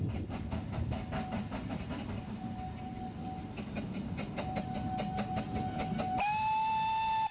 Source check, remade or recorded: recorded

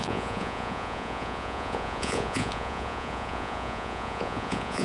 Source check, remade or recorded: remade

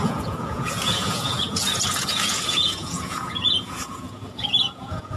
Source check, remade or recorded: remade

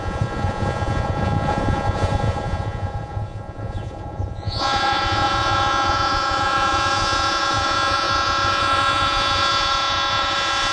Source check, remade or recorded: remade